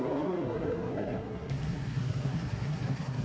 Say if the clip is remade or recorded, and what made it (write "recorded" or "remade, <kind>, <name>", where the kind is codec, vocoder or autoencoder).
remade, codec, SNAC